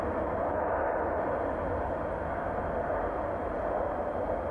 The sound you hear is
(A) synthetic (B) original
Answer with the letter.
B